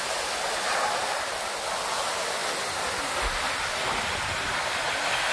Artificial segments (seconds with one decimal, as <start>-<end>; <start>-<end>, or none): none